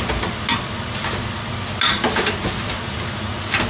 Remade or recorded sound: recorded